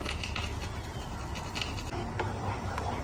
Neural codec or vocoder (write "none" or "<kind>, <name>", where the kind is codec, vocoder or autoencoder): none